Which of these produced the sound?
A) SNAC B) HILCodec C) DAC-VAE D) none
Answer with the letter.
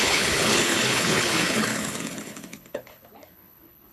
B